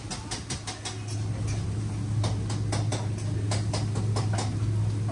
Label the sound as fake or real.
real